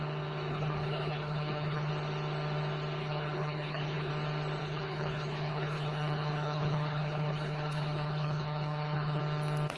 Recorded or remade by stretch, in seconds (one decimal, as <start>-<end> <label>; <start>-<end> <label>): 0.0-0.5 recorded; 0.5-1.9 remade; 1.9-3.0 recorded; 3.0-4.1 remade; 4.1-4.6 recorded; 4.6-9.2 remade; 9.2-9.8 recorded